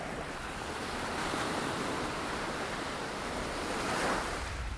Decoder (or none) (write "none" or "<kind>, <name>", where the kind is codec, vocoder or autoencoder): none